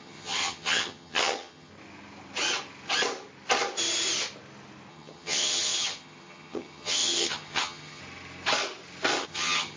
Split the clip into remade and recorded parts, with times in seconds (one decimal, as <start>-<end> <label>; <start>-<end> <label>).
0.0-1.7 remade; 1.7-4.9 recorded; 4.9-8.0 remade; 8.0-9.2 recorded; 9.2-9.8 remade